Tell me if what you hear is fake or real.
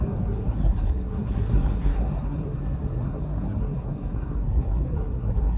fake